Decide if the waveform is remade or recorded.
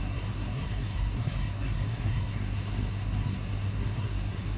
remade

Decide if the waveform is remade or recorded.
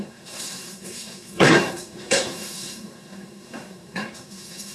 remade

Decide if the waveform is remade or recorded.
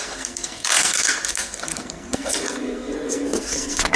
remade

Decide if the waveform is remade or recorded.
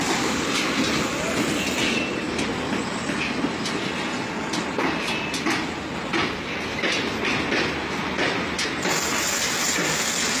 recorded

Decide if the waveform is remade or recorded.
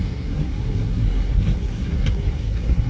remade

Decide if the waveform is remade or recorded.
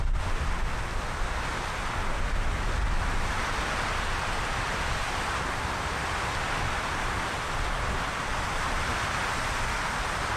recorded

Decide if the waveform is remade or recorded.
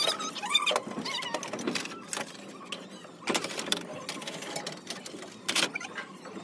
recorded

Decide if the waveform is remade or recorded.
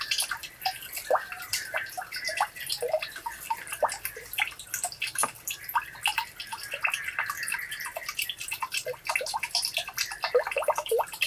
recorded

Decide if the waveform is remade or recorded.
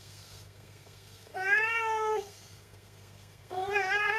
remade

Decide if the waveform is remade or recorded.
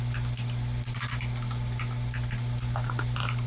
recorded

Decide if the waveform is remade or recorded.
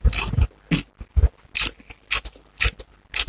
recorded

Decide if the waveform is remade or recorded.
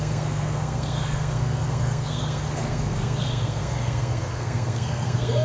remade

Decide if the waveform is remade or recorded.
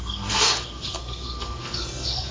remade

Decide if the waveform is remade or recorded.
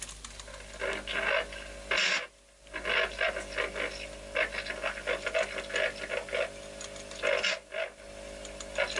recorded